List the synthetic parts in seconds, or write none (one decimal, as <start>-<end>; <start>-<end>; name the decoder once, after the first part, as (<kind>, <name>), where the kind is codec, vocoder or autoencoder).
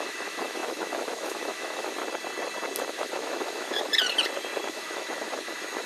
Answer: 0.0-2.0 (autoencoder, DAC-VAE); 2.9-3.9; 4.7-5.9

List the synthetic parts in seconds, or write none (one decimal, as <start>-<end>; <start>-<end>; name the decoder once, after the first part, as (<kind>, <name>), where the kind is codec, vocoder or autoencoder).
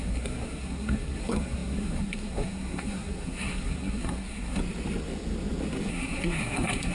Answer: 0.0-4.6 (codec, SNAC); 5.9-6.9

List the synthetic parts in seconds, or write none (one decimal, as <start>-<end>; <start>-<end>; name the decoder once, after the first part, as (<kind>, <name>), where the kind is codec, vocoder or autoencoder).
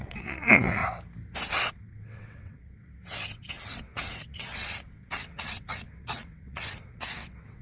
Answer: 0.0-0.8 (vocoder, WaveNeXt); 1.5-7.6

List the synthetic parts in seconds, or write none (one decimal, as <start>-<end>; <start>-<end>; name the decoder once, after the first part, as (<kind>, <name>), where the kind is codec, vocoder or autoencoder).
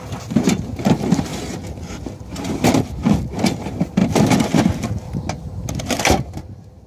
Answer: none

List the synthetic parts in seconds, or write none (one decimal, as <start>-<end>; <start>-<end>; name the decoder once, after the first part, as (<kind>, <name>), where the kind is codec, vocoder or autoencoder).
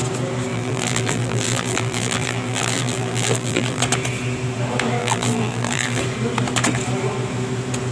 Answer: 0.5-3.8 (vocoder, BigVGAN v2); 5.0-6.0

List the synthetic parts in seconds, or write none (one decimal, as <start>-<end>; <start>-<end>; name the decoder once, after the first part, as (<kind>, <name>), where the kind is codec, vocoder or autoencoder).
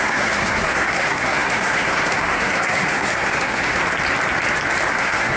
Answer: 0.0-3.8 (codec, SNAC); 4.9-5.4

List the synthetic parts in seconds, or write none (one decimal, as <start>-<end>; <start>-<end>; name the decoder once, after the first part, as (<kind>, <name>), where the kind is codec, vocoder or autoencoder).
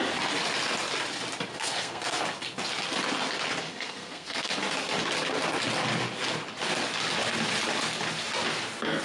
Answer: 1.5-2.2 (codec, SNAC); 3.7-4.5